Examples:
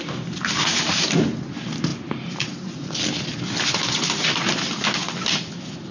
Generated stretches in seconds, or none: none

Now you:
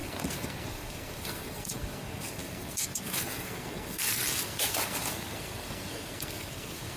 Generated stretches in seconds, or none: 0.0-7.0 (codec, SNAC)

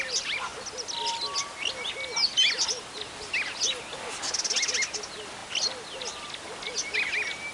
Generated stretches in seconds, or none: none

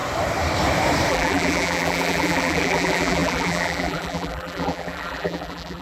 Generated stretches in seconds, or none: 1.1-5.8 (vocoder, BigVGAN v2)

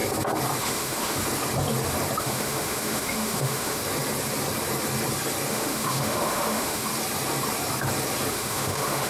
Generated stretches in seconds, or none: 0.6-1.2 (autoencoder, DAC-VAE); 2.2-3.8; 5.5-6.9; 8.3-9.1